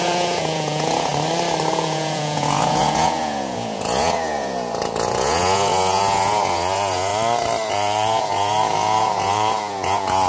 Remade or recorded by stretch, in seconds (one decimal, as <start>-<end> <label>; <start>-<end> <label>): 0.0-1.1 remade; 1.1-1.7 recorded; 1.7-7.1 remade; 7.1-7.7 recorded; 7.7-10.3 remade